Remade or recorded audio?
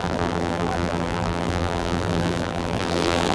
remade